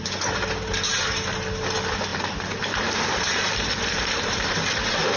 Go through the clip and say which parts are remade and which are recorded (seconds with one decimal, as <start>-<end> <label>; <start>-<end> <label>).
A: 0.0-2.1 recorded; 2.1-5.2 remade